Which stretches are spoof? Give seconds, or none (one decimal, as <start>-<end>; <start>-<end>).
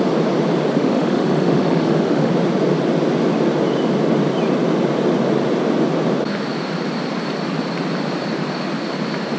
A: 0.8-2.3